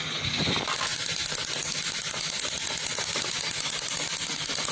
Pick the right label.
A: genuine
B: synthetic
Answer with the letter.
A